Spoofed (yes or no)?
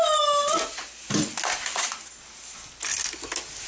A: no